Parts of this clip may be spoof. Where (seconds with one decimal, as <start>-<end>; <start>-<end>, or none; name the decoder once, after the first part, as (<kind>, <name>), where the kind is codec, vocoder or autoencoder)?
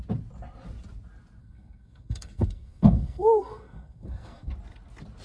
1.4-4.5 (codec, SNAC)